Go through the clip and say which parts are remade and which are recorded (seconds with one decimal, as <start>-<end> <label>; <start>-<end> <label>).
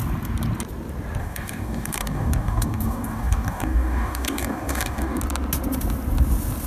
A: 0.0-1.2 recorded; 1.2-5.2 remade; 5.2-6.7 recorded